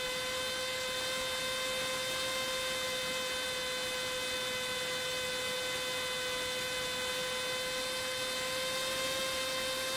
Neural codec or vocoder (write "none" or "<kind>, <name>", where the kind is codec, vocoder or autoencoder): none